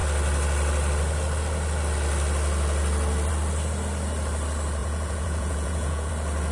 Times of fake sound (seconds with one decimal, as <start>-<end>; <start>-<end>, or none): 4.8-6.1